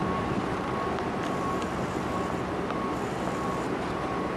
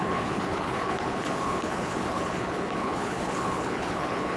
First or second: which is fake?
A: second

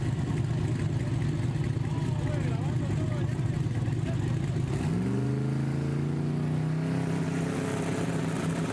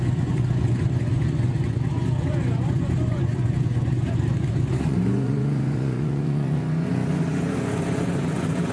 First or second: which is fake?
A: second